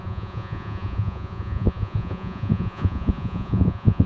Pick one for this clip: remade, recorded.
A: remade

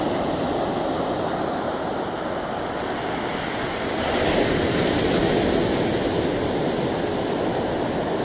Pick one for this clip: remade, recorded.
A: recorded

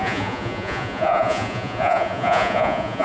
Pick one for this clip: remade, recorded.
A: remade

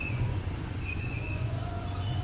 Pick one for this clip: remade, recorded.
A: remade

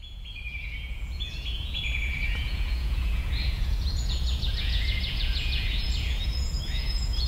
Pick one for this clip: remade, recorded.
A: remade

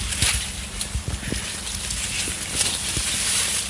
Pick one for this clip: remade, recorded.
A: recorded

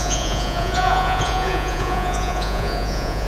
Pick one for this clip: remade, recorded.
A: remade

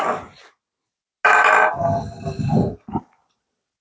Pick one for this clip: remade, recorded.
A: recorded